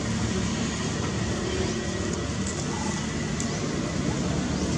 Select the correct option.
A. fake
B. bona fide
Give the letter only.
B